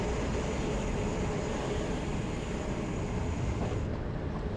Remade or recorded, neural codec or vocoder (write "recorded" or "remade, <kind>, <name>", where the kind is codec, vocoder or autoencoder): recorded